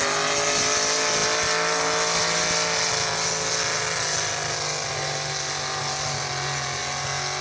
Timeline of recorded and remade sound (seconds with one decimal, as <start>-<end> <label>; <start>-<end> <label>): 0.0-7.4 recorded